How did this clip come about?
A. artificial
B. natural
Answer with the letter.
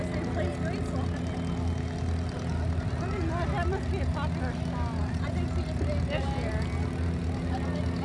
B